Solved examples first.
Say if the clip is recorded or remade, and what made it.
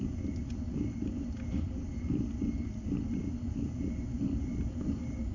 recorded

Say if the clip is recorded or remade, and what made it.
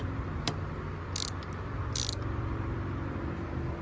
recorded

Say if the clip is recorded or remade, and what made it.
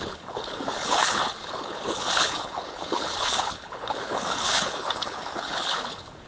remade, codec, HILCodec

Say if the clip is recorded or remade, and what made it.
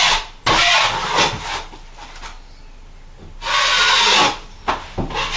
recorded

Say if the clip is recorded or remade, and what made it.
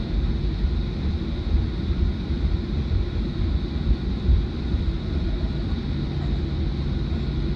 recorded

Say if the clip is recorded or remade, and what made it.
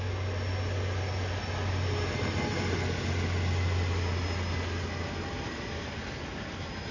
recorded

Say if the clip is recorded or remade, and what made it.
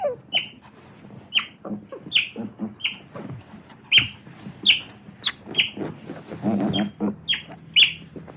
recorded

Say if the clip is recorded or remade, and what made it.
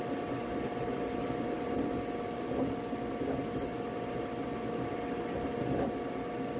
recorded